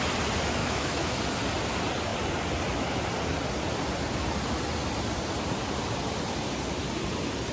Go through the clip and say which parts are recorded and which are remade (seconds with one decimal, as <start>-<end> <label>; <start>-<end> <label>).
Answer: 0.0-0.6 recorded; 0.6-1.2 remade; 1.2-7.5 recorded

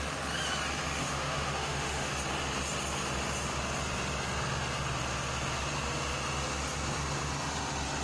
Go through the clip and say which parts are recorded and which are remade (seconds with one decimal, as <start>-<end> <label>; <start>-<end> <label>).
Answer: 0.0-1.0 recorded; 1.0-2.1 remade; 2.1-8.0 recorded

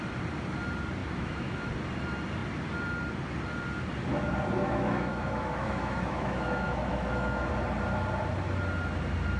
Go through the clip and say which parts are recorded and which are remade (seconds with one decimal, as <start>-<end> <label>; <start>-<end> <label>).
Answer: 0.0-1.0 recorded; 1.0-1.7 remade; 1.7-4.6 recorded; 4.6-7.5 remade; 7.5-9.4 recorded

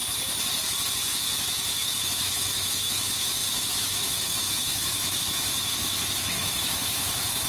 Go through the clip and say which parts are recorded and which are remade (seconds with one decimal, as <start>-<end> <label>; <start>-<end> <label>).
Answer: 0.0-0.9 recorded; 0.9-7.5 remade

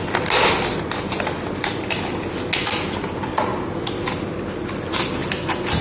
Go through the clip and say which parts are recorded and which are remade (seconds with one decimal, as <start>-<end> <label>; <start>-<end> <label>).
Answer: 0.0-5.8 recorded

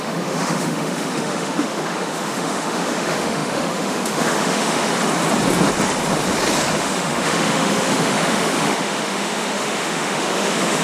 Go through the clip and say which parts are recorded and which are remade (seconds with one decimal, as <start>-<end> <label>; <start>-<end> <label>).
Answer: 0.0-4.9 remade; 4.9-6.8 recorded; 6.8-10.8 remade

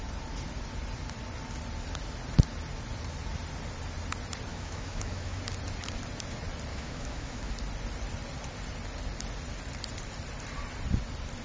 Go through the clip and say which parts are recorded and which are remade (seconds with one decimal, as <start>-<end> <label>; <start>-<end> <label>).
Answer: 0.0-4.5 recorded; 4.5-5.4 remade; 5.4-6.7 recorded; 6.7-7.5 remade; 7.5-11.4 recorded